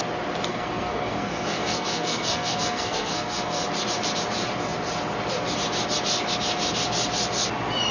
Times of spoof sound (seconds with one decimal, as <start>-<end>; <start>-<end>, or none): 0.5-3.6